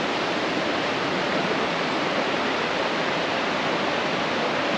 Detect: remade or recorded recorded